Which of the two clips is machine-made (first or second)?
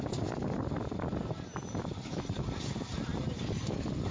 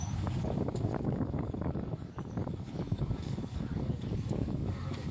second